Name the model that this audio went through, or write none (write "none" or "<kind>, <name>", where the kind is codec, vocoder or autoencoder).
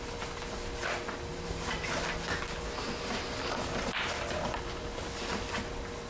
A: none